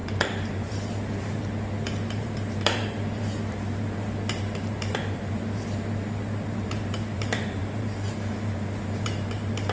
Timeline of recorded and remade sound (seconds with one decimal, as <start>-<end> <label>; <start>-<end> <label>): 0.0-9.7 remade